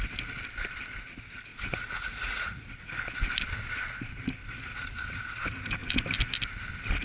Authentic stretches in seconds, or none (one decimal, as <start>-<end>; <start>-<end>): 0.0-1.5; 2.9-7.0